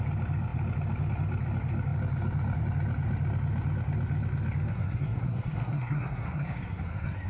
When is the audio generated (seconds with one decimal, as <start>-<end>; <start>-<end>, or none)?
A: 4.7-7.3